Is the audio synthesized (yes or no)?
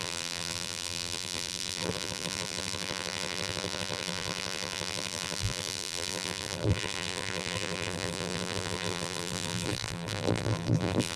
yes